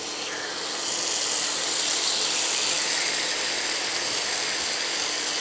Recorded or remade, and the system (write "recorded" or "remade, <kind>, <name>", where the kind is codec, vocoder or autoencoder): recorded